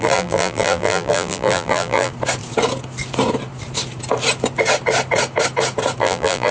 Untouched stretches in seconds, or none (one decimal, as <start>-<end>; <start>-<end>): 2.1-6.0

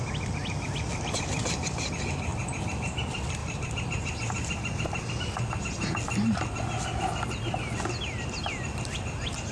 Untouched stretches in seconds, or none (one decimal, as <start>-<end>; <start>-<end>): 0.0-3.4; 5.1-9.5

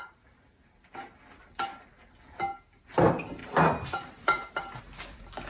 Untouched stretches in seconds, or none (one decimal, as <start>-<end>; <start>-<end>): 0.0-5.5

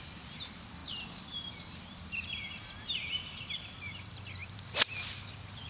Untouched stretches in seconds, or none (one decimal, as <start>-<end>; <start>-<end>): none

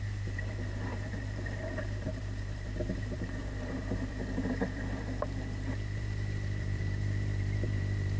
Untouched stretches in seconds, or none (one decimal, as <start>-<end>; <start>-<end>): none

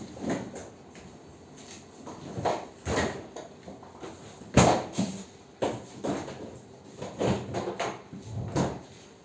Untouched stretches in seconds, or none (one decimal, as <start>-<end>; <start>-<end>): 0.0-9.2